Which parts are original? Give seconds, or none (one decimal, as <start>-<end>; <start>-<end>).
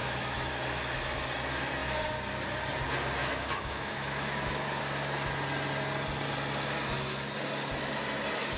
0.5-3.2; 4.8-8.6